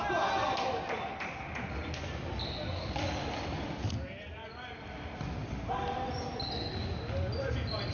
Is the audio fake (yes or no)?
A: no